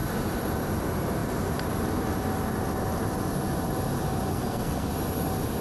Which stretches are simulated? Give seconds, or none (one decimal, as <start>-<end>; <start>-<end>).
4.3-4.9